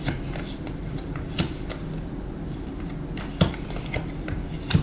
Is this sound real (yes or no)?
yes